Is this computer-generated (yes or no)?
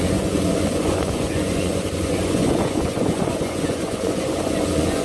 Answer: yes